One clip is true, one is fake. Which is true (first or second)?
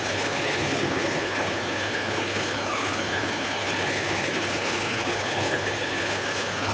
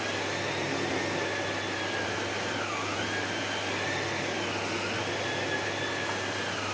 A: second